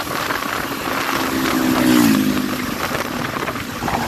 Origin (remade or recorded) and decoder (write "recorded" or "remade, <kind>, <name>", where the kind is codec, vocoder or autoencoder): recorded